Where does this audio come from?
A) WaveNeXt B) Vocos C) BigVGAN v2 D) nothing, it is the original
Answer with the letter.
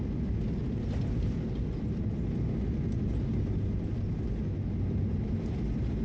D